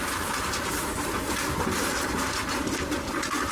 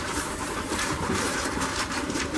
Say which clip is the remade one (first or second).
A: second